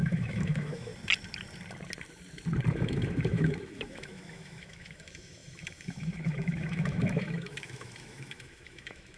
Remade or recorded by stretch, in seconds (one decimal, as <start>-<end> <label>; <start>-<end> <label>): 0.0-0.9 remade; 0.9-2.7 recorded; 2.7-9.2 remade